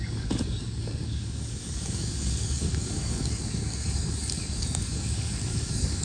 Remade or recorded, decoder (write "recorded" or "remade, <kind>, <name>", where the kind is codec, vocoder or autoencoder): remade, codec, DAC